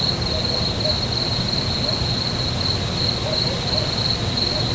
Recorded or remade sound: recorded